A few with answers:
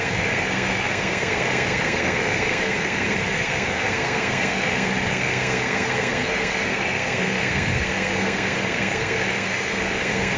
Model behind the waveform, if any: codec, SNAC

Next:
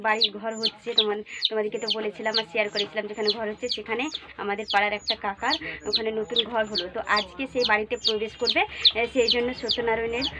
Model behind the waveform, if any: none